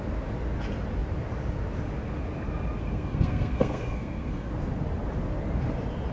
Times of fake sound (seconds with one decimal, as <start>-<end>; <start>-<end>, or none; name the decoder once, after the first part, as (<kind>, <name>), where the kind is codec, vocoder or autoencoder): 2.8-4.5 (codec, SNAC)

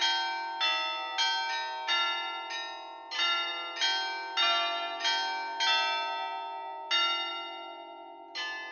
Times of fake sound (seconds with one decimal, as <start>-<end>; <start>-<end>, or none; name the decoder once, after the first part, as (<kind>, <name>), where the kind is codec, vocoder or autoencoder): none

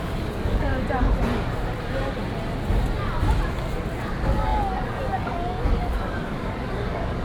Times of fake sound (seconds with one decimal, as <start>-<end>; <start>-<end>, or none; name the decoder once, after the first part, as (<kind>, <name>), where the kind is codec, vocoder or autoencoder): 0.0-0.7 (codec, DAC); 4.1-7.2

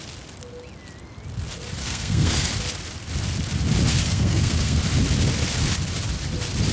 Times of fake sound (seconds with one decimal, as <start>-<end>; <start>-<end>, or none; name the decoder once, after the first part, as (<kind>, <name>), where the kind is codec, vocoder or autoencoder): 1.8-2.5 (codec, SNAC); 3.9-4.8

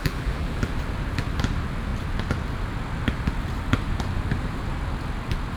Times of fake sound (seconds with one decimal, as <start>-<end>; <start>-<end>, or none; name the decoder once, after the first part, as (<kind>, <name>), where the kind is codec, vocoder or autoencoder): 0.0-0.7 (vocoder, BigVGAN v2)

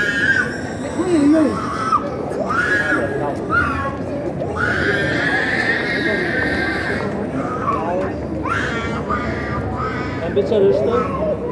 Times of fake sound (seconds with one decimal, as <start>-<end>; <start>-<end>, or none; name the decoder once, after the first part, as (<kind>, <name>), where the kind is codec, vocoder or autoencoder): 5.0-7.7 (vocoder, BigVGAN v2)

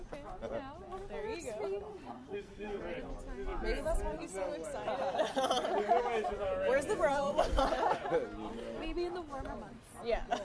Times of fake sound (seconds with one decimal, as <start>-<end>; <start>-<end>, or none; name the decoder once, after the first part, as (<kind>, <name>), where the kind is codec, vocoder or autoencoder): 1.9-2.8 (codec, SNAC); 7.1-7.6

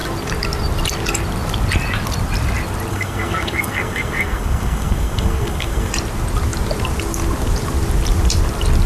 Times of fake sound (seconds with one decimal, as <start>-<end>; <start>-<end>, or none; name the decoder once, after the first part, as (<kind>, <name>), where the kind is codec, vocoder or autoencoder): 2.9-5.9 (codec, SNAC)